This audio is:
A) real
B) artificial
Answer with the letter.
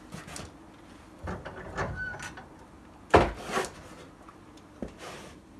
A